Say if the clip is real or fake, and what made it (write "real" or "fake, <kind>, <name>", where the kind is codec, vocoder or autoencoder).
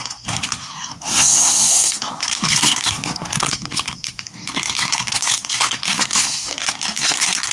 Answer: fake, codec, SNAC